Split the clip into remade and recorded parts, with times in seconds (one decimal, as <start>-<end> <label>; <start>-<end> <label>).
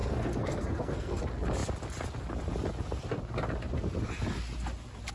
0.0-1.2 remade; 1.2-5.1 recorded